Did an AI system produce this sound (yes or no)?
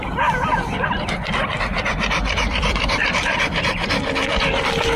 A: yes